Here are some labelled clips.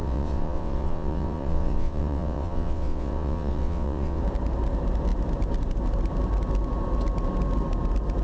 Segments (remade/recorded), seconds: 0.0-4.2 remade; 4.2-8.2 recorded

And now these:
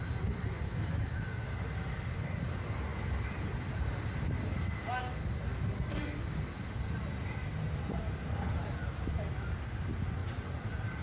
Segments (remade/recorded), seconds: 0.0-8.8 recorded; 8.8-9.4 remade; 9.4-10.2 recorded; 10.2-11.0 remade

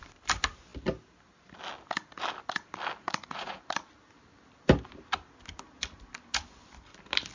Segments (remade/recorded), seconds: 0.0-3.0 recorded; 3.0-3.6 remade; 3.6-7.3 recorded

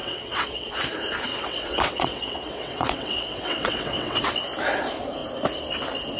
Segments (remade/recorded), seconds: 0.0-0.7 remade; 0.7-1.3 recorded; 1.3-4.2 remade; 4.2-6.2 recorded